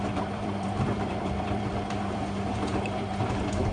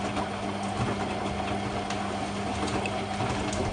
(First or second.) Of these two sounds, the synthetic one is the first